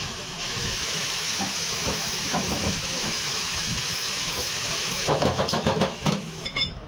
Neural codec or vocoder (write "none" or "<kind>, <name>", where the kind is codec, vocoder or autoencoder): autoencoder, DAC-VAE